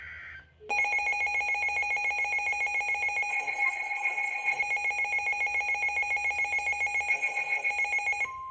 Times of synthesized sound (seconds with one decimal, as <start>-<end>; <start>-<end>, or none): 3.3-4.6; 7.1-7.7